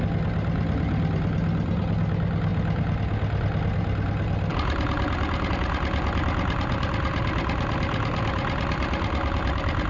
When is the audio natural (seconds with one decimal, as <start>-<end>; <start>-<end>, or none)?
0.0-9.9